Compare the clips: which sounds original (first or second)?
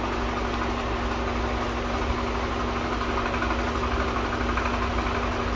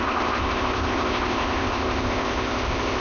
first